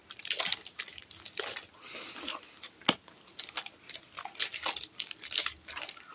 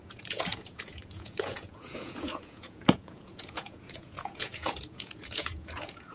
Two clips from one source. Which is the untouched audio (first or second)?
first